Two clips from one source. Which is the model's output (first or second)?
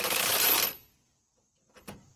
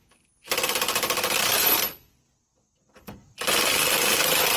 first